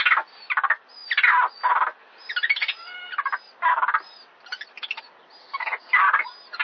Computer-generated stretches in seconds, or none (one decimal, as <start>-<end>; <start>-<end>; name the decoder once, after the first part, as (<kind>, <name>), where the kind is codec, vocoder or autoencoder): 5.4-5.9 (codec, SNAC)